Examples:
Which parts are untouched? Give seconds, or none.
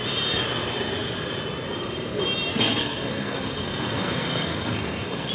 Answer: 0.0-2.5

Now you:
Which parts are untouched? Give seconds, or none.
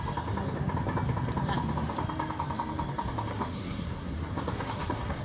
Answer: 0.0-3.3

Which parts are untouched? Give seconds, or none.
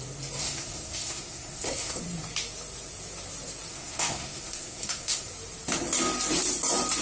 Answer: 0.0-0.4; 2.0-3.7; 5.3-7.0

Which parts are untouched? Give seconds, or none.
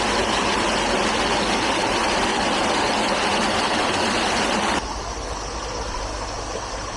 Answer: 0.0-7.0